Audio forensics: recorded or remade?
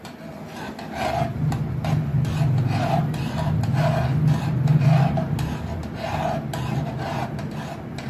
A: recorded